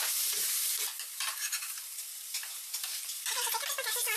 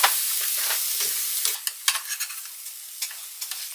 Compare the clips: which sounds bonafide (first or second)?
second